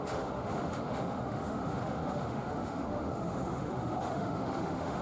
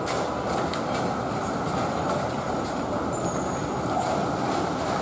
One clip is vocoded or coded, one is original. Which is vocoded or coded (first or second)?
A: first